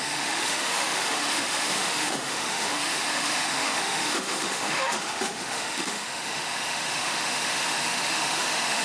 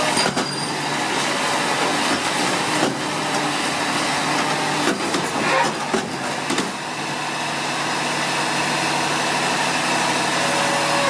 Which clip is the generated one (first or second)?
first